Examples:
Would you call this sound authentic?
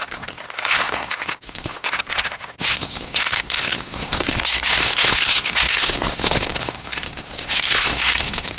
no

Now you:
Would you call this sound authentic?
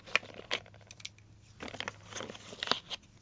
yes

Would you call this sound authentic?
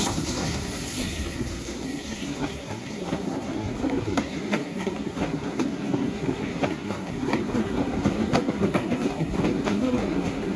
no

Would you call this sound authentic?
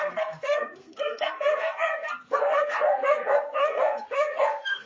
no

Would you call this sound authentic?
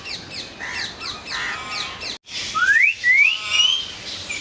yes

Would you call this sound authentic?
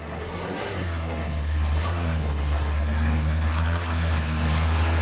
no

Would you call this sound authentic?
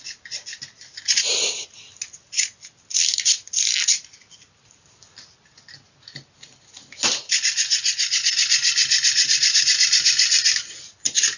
yes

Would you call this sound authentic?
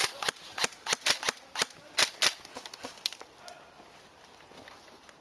yes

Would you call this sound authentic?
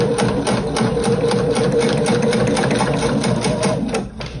yes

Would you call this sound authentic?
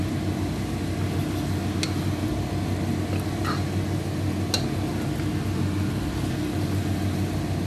yes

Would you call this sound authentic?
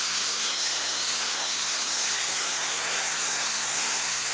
no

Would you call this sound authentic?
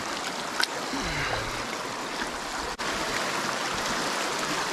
yes